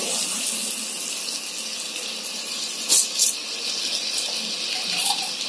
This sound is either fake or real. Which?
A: real